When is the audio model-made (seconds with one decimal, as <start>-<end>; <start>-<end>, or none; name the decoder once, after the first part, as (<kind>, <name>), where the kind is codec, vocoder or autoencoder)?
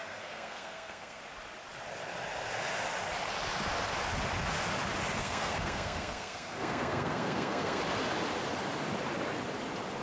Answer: 0.0-1.2 (codec, SNAC); 5.2-7.8